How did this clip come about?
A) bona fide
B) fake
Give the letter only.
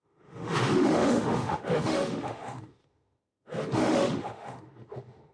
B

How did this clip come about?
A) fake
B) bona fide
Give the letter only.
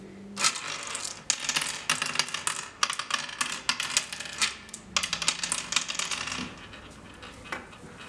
B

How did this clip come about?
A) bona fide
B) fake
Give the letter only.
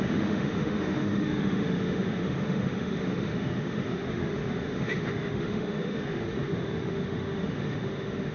B